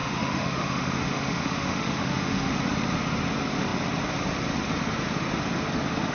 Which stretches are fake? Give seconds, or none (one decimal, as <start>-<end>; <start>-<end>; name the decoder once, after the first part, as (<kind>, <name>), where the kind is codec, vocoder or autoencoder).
0.0-2.5 (autoencoder, DAC-VAE)